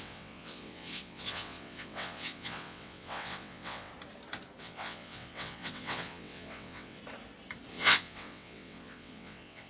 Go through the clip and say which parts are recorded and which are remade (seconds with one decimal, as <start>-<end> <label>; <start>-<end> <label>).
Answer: 0.0-3.9 remade; 3.9-4.6 recorded; 4.6-7.0 remade; 7.0-7.7 recorded; 7.7-9.7 remade